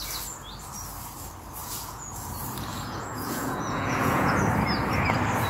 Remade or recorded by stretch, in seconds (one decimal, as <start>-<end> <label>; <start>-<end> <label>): 0.0-1.6 recorded; 1.6-2.2 remade; 2.2-2.7 recorded; 2.7-4.4 remade; 4.4-5.5 recorded